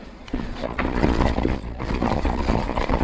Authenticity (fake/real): fake